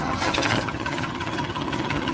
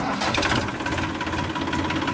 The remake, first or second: first